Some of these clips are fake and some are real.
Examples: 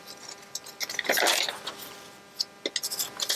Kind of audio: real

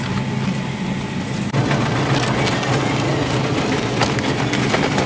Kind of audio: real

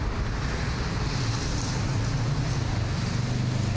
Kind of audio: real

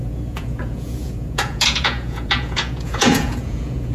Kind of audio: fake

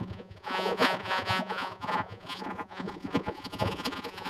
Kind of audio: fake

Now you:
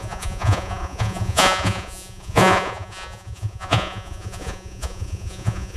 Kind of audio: fake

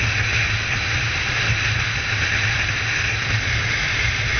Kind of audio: real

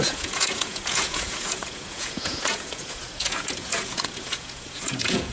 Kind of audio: fake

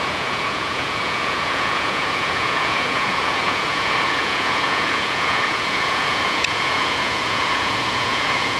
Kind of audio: fake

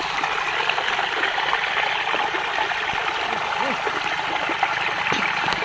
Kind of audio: real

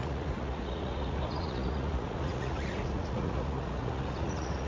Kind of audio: fake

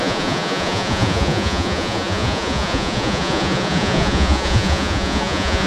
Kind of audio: fake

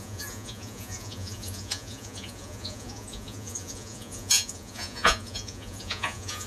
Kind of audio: fake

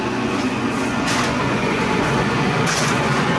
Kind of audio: fake